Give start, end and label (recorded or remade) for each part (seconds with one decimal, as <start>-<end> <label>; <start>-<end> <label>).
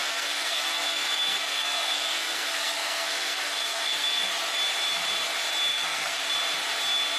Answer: 0.0-4.3 remade; 4.3-5.7 recorded; 5.7-6.3 remade; 6.3-7.2 recorded